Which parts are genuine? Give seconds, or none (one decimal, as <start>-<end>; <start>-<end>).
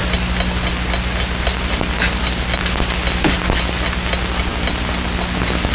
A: 0.0-5.7